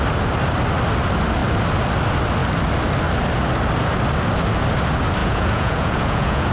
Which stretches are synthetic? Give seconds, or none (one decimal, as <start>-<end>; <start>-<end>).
5.2-6.5